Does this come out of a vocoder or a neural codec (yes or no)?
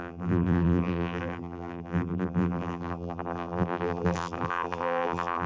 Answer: yes